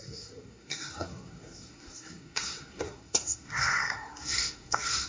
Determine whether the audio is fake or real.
fake